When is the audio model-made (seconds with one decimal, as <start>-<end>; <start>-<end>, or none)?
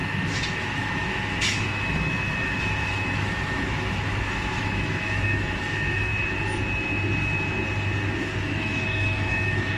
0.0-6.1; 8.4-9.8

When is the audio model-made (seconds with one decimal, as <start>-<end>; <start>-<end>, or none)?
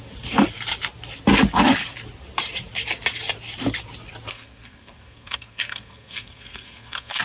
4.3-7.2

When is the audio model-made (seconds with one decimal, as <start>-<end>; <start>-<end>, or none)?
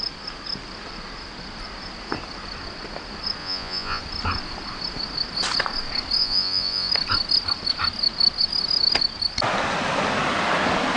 3.4-4.0; 6.2-6.9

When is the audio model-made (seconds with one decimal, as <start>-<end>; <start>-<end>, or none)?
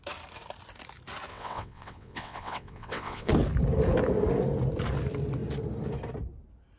1.3-3.3